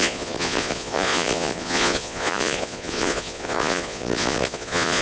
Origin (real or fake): fake